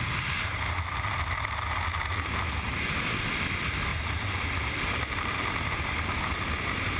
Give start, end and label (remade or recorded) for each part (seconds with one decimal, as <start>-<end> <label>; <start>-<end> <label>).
0.0-3.9 recorded; 3.9-5.7 remade; 5.7-7.0 recorded